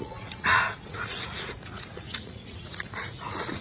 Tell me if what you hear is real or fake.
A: fake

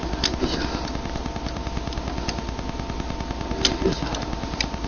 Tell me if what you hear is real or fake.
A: real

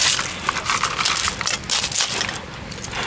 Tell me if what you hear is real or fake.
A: real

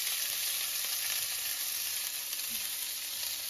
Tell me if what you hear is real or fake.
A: real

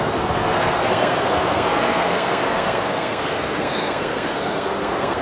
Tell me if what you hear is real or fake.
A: fake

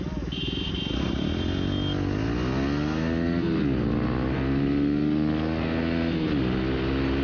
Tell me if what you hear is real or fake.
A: real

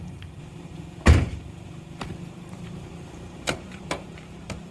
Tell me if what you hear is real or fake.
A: fake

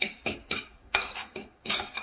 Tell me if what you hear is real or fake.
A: fake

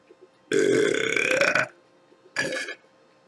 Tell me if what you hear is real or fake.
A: real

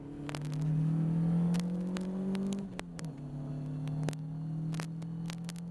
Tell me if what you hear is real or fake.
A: real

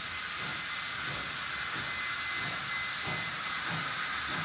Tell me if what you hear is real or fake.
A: real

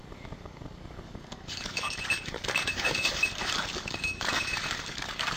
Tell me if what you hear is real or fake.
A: fake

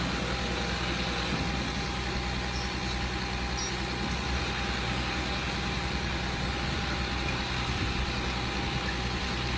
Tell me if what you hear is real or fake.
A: real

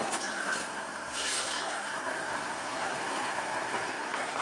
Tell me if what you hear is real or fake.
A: fake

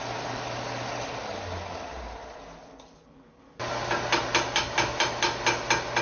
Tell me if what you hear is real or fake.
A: real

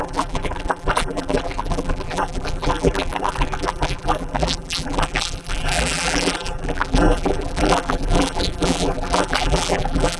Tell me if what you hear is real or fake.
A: fake